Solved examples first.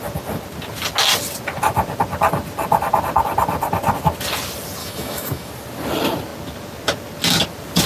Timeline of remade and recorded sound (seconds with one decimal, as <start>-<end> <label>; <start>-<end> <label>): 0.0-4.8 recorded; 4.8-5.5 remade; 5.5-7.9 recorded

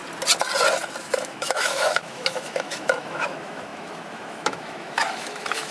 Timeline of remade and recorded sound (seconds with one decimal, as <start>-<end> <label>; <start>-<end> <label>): 0.0-1.0 recorded; 1.0-5.7 remade

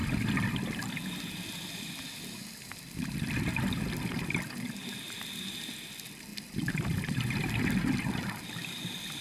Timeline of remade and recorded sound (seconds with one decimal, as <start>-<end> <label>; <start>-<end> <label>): 0.0-9.2 recorded

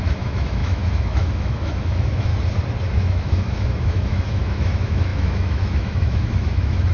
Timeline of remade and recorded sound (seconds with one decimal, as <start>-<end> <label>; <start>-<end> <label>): 0.0-2.3 remade; 2.3-2.9 recorded; 2.9-6.9 remade

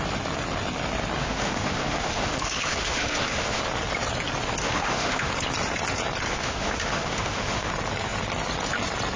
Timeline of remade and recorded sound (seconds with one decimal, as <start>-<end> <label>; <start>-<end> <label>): 0.0-1.2 recorded; 1.2-3.6 remade; 3.6-4.6 recorded; 4.6-5.3 remade; 5.3-6.3 recorded; 6.3-7.7 remade; 7.7-9.2 recorded

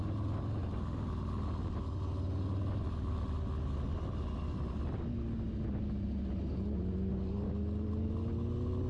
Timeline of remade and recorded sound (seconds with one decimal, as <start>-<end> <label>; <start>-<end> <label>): 0.0-8.9 recorded

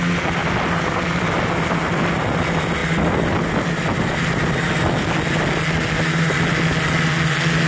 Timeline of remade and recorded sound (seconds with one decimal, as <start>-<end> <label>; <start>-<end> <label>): 0.0-7.7 recorded